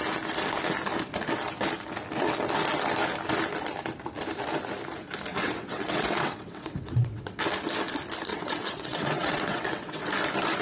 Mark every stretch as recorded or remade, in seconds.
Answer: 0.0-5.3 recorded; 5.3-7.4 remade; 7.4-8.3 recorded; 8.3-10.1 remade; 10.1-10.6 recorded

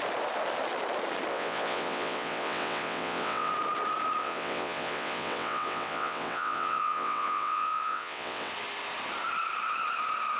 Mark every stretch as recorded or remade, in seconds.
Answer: 0.0-1.3 recorded; 1.3-3.5 remade; 3.5-4.2 recorded; 4.2-8.5 remade; 8.5-10.4 recorded

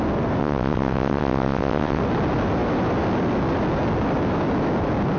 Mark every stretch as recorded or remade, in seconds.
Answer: 0.0-0.4 recorded; 0.4-2.0 remade; 2.0-5.2 recorded

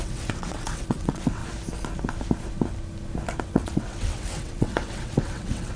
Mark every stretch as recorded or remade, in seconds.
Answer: 0.0-1.4 remade; 1.4-3.4 recorded; 3.4-5.8 remade

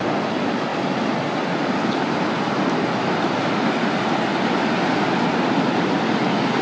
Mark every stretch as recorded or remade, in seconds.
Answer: 0.0-6.6 recorded

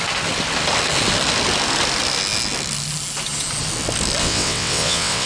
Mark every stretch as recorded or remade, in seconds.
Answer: 0.0-4.2 recorded; 4.2-5.3 remade

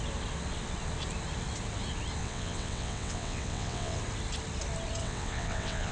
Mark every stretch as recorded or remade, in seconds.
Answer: 0.0-2.2 recorded; 2.2-4.0 remade; 4.0-5.0 recorded; 5.0-5.9 remade